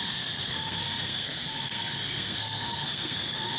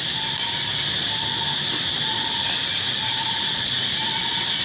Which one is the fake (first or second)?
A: first